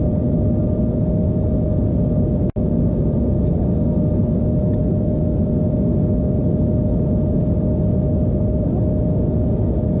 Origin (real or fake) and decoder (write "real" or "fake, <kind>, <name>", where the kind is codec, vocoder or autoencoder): real